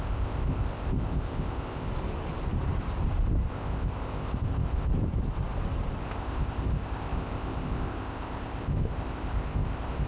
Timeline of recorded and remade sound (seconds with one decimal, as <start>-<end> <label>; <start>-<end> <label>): 0.0-1.9 remade; 1.9-3.5 recorded; 3.5-4.9 remade; 4.9-6.0 recorded; 6.0-10.1 remade